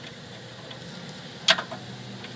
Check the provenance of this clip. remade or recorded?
recorded